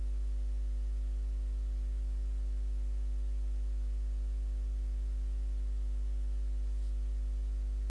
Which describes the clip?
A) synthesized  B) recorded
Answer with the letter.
B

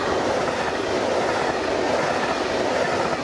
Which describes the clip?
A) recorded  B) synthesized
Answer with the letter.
A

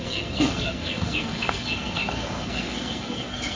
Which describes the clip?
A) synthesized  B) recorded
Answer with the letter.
A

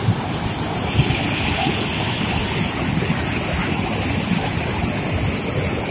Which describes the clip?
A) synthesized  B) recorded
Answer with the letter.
B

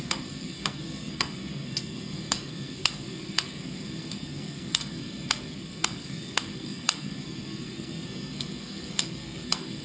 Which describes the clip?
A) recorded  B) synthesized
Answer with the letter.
B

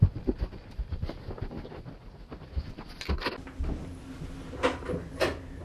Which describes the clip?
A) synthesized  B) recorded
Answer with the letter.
B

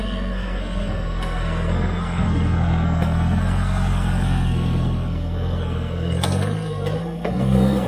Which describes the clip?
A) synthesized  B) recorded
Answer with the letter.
A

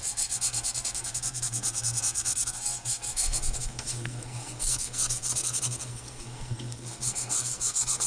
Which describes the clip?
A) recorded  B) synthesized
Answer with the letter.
B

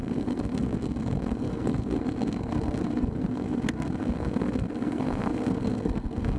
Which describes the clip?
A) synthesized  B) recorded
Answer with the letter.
A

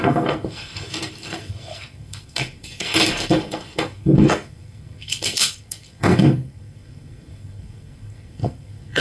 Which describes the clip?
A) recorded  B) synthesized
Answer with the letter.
B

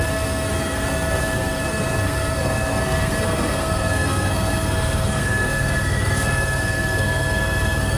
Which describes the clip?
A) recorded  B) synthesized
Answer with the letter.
B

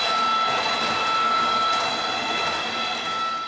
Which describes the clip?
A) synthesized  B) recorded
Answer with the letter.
B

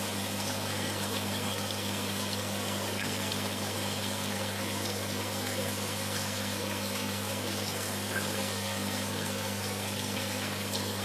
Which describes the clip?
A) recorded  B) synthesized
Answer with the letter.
B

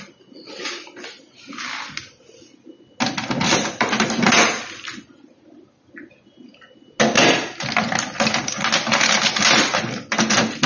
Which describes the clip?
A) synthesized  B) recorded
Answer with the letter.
B